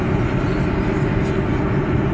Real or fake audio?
real